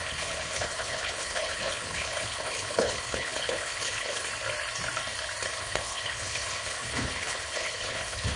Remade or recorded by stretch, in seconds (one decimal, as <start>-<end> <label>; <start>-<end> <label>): 0.0-4.3 remade; 4.3-5.6 recorded; 5.6-8.4 remade

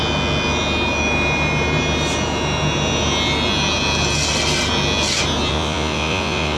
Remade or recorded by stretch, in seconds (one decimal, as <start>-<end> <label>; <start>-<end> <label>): 0.0-5.5 recorded; 5.5-6.6 remade

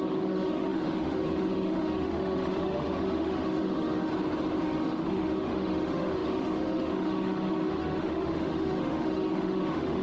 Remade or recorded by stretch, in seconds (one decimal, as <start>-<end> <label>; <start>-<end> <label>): 0.0-4.1 remade; 4.1-4.6 recorded; 4.6-10.0 remade

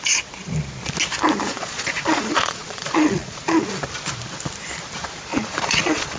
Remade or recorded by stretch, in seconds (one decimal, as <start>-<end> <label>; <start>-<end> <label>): 0.0-1.5 recorded; 1.5-3.8 remade; 3.8-5.3 recorded; 5.3-6.2 remade

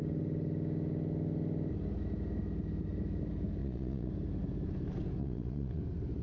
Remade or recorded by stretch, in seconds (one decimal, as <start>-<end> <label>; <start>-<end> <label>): 0.0-3.6 recorded; 3.6-4.1 remade; 4.1-5.2 recorded; 5.2-5.8 remade; 5.8-6.2 recorded

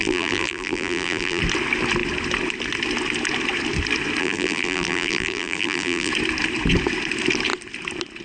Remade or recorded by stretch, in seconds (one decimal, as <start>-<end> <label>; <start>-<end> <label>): 0.0-1.4 remade; 1.4-4.2 recorded; 4.2-6.1 remade; 6.1-8.2 recorded

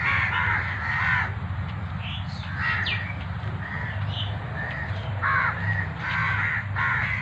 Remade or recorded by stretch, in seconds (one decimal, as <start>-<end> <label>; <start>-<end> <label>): 0.0-1.1 remade; 1.1-4.4 recorded; 4.4-6.2 remade; 6.2-7.2 recorded

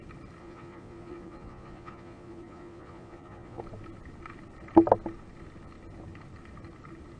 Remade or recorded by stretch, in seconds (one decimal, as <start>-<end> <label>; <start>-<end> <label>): 0.0-0.4 recorded; 0.4-3.6 remade; 3.6-7.2 recorded